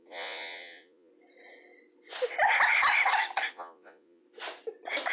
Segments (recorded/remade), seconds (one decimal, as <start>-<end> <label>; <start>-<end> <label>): 0.0-1.1 remade; 1.1-3.5 recorded; 3.5-4.2 remade; 4.2-5.1 recorded